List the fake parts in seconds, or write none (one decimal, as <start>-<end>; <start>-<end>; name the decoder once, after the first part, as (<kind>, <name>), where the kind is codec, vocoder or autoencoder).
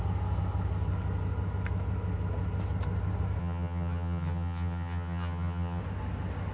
3.4-5.8 (vocoder, HiFi-GAN)